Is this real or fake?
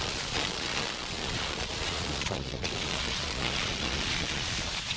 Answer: fake